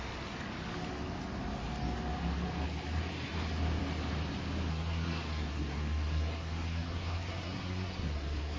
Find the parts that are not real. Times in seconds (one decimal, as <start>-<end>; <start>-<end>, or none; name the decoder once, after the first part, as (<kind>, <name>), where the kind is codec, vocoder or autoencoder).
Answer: 4.7-8.6 (codec, SNAC)